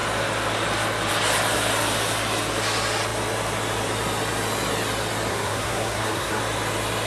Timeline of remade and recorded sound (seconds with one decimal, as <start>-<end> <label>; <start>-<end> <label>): 0.0-5.3 recorded; 5.3-6.4 remade; 6.4-7.1 recorded